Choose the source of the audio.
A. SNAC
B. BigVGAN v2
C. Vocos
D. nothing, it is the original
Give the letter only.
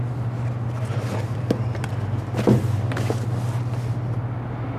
D